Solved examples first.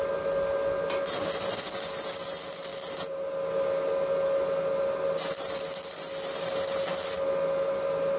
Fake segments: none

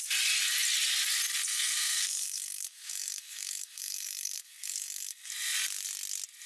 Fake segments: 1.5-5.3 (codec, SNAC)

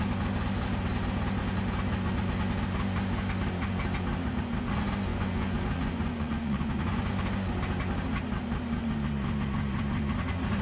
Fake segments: 5.1-7.1 (vocoder, Vocos)

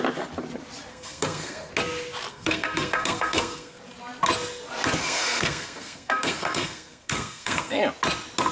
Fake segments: 0.9-1.7 (codec, SNAC); 2.3-3.8; 5.0-7.8